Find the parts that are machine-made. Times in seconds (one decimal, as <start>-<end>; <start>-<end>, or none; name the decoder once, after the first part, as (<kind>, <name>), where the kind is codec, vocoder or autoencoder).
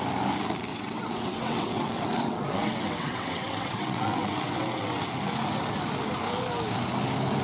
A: 0.7-5.1 (vocoder, WaveNeXt)